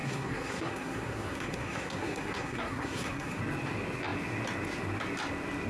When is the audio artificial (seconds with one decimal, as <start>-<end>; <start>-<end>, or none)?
0.0-3.4